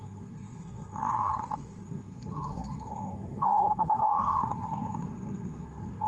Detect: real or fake fake